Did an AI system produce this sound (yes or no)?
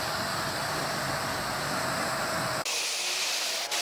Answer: no